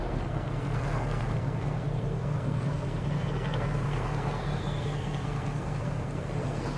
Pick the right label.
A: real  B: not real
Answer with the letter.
B